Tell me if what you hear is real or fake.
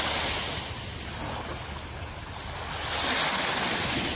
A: real